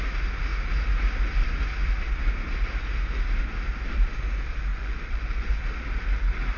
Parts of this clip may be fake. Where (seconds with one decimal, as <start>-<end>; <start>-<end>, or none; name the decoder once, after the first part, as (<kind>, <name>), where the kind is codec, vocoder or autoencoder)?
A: 4.7-5.6 (vocoder, Vocos)